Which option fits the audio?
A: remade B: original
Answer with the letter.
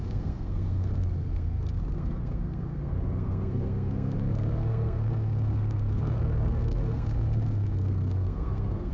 A